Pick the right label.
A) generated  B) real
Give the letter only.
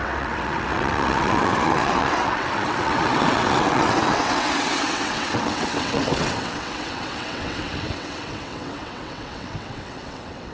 A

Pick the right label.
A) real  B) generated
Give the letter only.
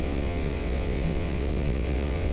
B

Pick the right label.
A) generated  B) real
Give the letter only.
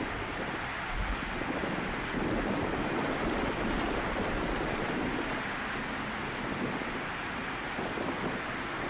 B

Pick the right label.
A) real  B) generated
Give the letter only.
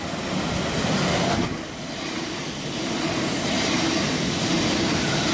A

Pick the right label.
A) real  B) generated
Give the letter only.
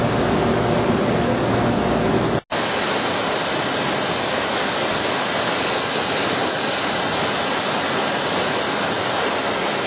A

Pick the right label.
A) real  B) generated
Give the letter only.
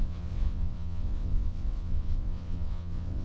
B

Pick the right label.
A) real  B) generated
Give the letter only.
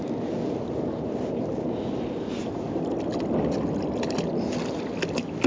A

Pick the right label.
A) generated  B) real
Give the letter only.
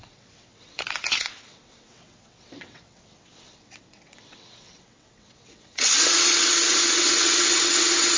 A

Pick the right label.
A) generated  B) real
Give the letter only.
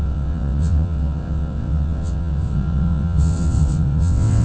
A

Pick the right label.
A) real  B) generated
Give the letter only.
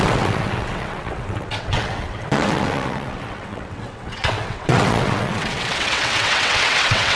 B